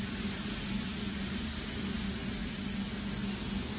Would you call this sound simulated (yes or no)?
no